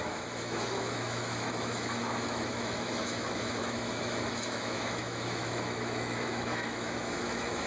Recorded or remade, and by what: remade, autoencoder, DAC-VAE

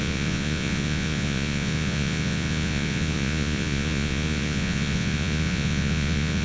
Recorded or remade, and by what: remade, vocoder, Vocos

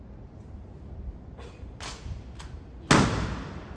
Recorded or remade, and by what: recorded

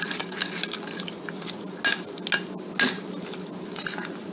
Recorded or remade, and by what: recorded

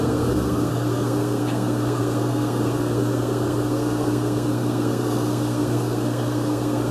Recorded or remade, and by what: remade, codec, SNAC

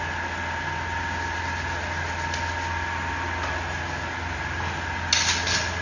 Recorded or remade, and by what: recorded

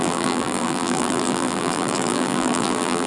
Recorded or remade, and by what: remade, vocoder, BigVGAN v2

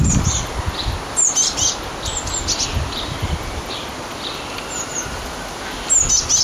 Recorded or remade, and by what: recorded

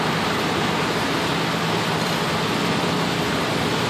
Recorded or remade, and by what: recorded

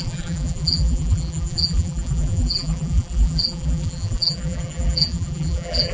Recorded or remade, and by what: remade, vocoder, BigVGAN v2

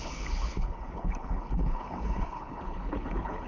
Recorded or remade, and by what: remade, codec, HILCodec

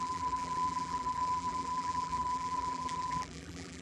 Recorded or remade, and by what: remade, vocoder, BigVGAN v2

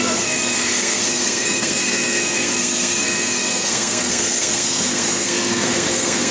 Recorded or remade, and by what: remade, codec, SNAC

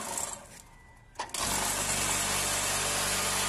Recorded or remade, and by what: recorded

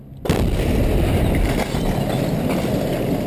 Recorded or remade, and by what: recorded